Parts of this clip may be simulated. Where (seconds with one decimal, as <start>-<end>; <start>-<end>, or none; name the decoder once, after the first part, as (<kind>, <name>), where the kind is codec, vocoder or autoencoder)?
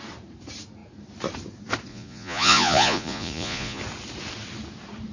1.9-3.8 (vocoder, Vocos)